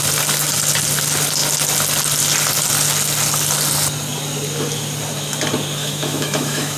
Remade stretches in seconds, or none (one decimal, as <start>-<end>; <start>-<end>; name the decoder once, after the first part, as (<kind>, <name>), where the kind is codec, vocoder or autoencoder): 5.8-6.8 (autoencoder, DAC-VAE)